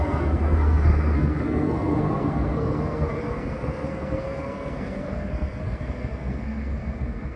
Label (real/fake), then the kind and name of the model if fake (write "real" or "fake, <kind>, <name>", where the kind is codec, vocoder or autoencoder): fake, codec, SNAC